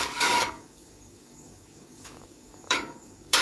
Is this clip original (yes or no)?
no